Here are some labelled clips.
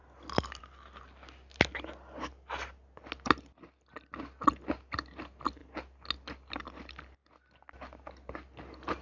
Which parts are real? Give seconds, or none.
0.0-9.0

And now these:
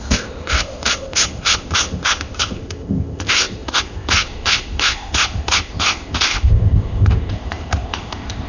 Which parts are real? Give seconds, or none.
none

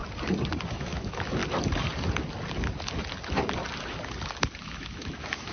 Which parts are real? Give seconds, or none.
0.0-0.7; 1.4-4.6

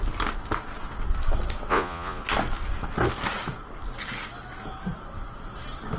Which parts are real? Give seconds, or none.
0.0-1.7; 2.2-6.0

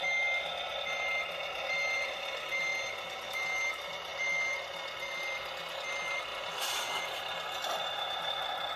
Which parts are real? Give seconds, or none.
0.0-6.3; 8.3-8.8

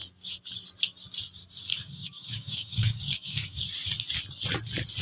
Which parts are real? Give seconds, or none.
0.0-1.7; 3.6-5.0